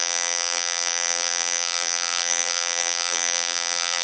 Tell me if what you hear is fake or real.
fake